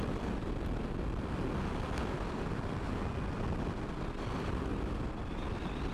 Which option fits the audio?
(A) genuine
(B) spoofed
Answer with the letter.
A